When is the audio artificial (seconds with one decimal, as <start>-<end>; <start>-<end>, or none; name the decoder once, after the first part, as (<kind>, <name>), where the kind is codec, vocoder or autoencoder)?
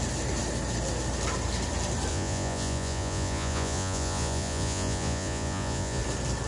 2.1-6.0 (vocoder, Vocos)